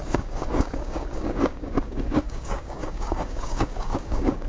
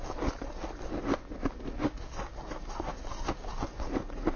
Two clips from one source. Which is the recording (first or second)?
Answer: second